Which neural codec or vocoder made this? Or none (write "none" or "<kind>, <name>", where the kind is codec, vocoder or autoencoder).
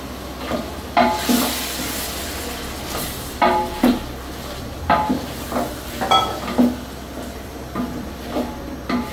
none